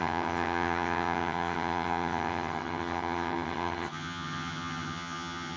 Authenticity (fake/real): fake